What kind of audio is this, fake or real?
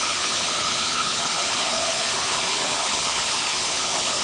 fake